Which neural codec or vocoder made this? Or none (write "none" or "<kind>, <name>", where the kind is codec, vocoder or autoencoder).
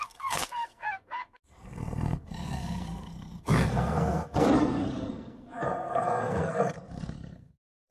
codec, SNAC